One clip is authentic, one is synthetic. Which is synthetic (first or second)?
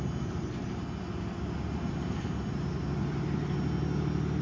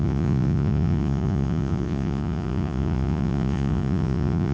second